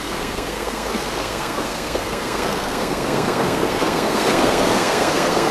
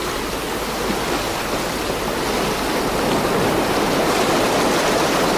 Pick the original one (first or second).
second